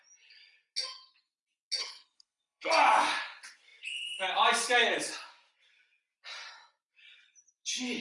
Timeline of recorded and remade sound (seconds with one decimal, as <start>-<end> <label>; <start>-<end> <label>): 0.0-1.8 recorded; 1.8-2.7 remade; 2.7-8.0 recorded